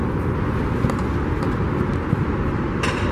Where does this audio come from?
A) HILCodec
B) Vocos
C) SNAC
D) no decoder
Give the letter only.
D